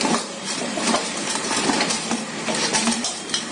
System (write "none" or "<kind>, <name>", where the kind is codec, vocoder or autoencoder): vocoder, BigVGAN v2